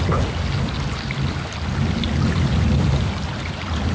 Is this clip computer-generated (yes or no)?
no